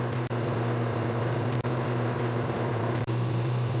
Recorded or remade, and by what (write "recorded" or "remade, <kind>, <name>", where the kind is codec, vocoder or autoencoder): remade, vocoder, BigVGAN v2